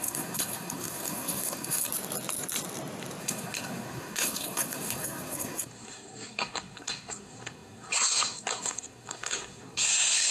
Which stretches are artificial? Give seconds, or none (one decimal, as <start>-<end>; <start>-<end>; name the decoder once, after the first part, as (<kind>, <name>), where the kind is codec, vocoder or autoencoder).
0.0-1.9 (codec, SNAC); 3.2-10.3